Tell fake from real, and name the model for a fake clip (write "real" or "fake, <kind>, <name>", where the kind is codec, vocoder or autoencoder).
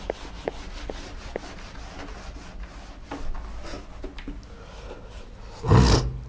real